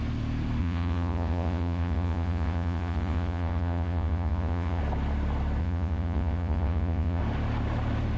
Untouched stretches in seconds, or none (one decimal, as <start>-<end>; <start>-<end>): 0.0-0.6; 4.8-5.6; 7.2-8.2